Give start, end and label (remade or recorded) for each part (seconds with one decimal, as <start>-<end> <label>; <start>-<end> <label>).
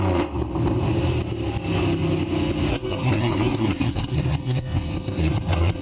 0.0-2.7 recorded; 2.7-5.8 remade